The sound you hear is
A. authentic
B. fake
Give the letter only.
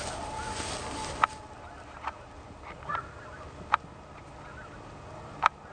A